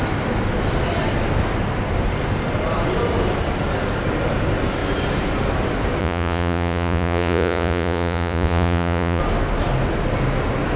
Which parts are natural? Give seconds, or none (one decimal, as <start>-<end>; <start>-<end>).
0.0-6.0; 9.2-10.8